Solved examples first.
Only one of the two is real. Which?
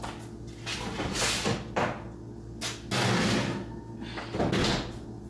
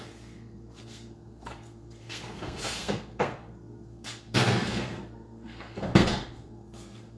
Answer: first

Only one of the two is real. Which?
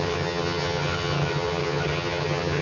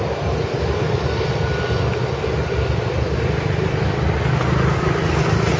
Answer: second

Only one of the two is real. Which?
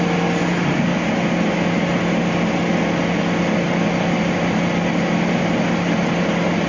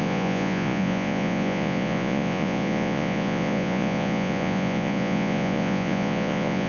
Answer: first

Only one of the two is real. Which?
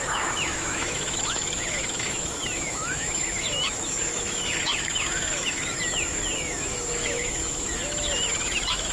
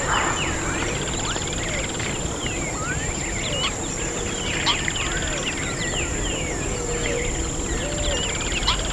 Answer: second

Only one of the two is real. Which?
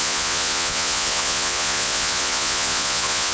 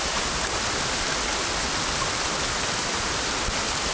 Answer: second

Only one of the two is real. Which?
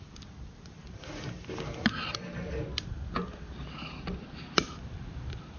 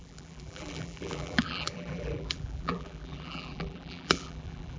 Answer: first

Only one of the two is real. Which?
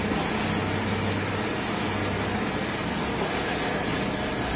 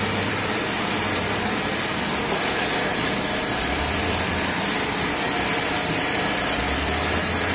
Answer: first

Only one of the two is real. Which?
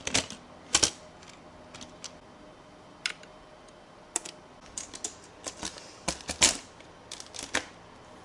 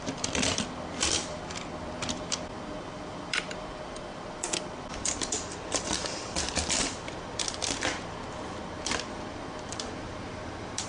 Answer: first